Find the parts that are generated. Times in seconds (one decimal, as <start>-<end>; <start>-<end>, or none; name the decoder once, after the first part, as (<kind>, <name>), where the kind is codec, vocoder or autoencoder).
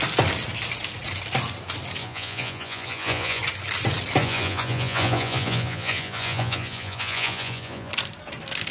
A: 2.0-3.4 (vocoder, Vocos); 4.2-7.9